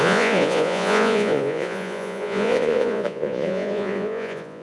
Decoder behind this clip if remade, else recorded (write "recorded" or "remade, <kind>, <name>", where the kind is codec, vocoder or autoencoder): remade, vocoder, Vocos